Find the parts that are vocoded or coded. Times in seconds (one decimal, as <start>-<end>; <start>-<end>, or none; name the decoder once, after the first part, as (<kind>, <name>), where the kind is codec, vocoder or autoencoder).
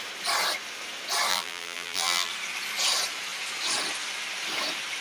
1.3-2.3 (vocoder, BigVGAN v2)